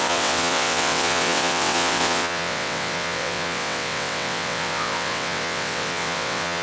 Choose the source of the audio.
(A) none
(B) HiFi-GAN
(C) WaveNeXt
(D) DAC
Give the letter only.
C